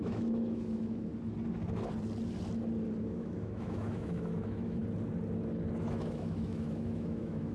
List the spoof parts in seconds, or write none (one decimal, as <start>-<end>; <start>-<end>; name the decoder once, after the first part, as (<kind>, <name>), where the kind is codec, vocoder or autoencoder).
0.0-1.1 (autoencoder, DAC-VAE); 3.0-4.8; 5.8-7.5